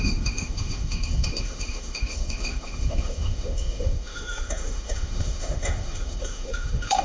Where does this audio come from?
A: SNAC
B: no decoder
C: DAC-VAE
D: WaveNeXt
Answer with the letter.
C